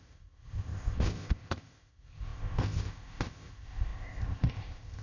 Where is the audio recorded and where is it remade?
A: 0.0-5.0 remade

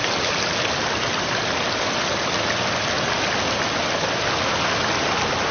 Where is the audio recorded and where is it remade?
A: 0.0-5.5 recorded